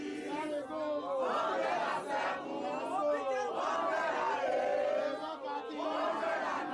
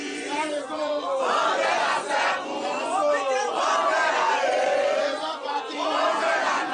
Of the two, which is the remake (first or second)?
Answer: second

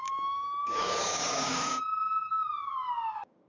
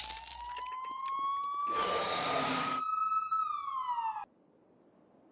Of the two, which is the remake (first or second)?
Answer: first